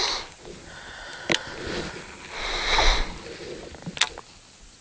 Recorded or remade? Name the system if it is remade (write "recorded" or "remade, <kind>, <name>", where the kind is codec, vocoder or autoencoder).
recorded